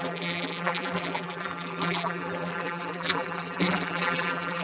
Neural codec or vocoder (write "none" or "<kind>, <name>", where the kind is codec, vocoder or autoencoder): vocoder, BigVGAN v2